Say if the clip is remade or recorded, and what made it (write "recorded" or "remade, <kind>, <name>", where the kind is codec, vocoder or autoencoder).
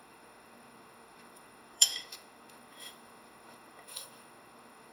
remade, autoencoder, DAC-VAE